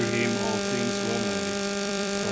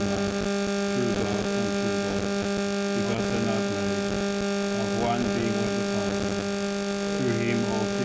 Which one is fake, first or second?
first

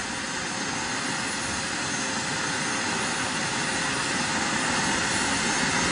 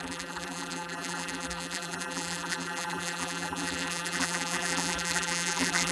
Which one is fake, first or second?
second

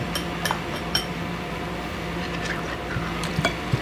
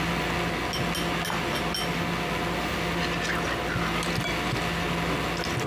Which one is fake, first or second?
first